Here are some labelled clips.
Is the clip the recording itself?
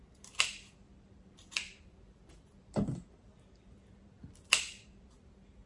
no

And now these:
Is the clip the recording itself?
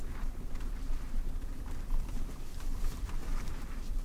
no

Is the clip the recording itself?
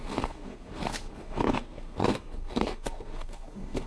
no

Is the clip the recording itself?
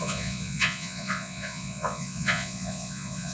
no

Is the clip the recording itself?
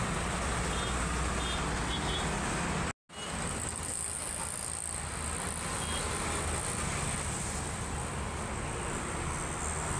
yes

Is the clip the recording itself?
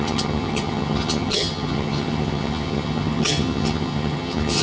no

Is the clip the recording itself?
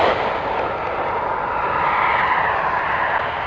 yes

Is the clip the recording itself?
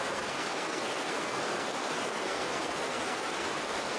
no